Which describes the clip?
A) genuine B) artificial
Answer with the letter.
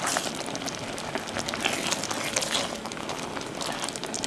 A